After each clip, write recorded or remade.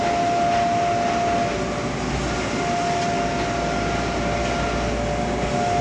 recorded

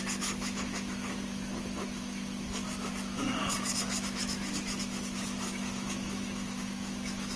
remade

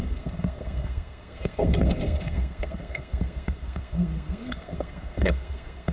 remade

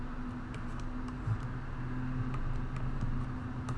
recorded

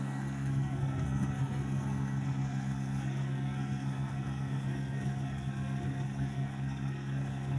remade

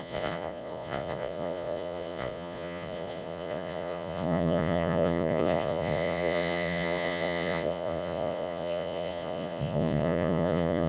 remade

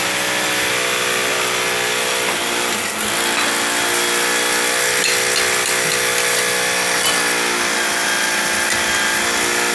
recorded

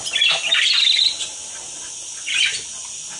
recorded